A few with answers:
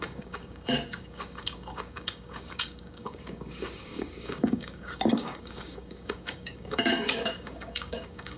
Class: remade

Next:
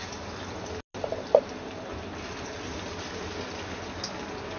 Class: recorded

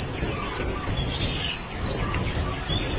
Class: recorded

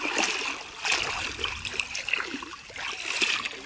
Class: recorded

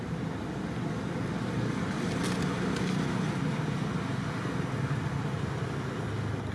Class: recorded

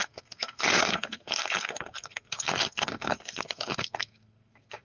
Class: remade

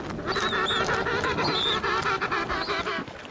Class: recorded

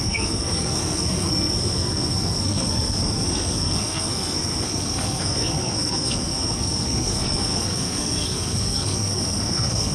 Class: remade